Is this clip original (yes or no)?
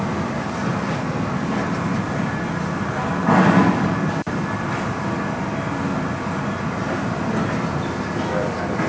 yes